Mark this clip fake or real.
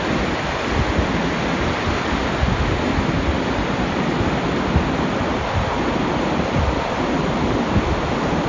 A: real